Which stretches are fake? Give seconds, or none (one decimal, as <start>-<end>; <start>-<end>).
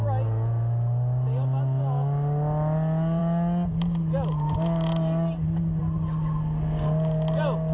none